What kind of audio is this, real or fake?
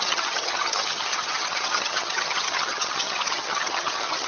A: fake